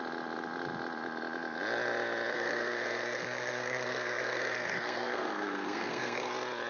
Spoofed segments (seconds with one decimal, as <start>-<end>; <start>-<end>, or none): 2.3-6.3

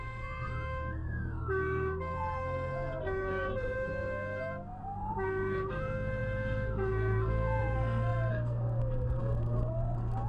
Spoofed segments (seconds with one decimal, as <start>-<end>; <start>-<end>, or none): 0.0-10.3

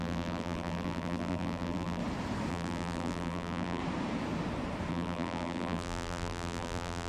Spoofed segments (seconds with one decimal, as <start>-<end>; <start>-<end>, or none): 0.0-2.0; 2.5-3.8; 4.9-7.1

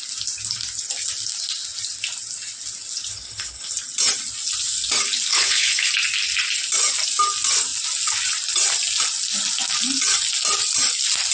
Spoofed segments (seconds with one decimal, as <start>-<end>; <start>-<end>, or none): 3.1-3.7; 5.3-5.9

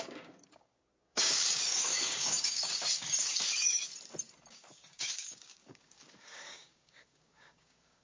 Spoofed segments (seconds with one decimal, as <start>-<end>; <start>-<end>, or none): 0.0-3.9; 4.5-8.0

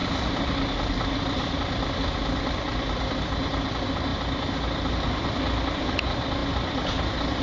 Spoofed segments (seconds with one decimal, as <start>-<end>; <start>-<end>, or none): 0.0-7.4